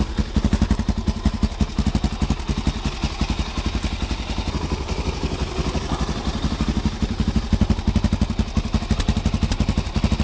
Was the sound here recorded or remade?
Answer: recorded